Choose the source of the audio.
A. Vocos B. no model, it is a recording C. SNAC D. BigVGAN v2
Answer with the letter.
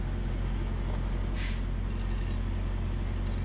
B